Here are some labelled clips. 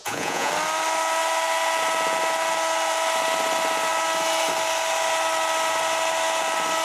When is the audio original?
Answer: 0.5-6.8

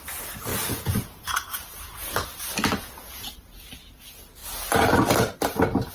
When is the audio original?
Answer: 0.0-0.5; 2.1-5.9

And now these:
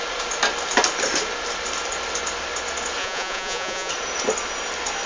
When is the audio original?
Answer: 0.0-3.0; 3.9-5.1

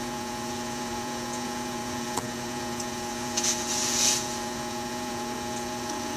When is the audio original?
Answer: none

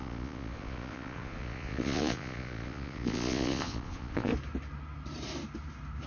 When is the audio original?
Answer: 4.3-6.1